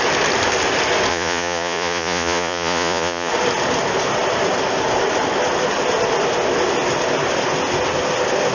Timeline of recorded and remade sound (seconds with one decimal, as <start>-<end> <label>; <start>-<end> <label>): 0.0-1.1 recorded; 1.1-3.3 remade; 3.3-8.5 recorded